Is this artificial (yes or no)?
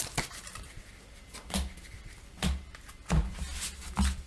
no